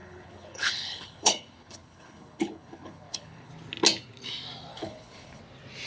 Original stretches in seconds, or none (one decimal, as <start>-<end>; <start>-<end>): 3.5-4.7; 5.4-5.9